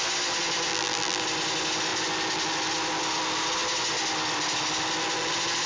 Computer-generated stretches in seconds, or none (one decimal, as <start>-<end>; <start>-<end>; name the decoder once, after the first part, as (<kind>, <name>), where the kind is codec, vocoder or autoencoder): 0.7-1.2 (vocoder, BigVGAN v2)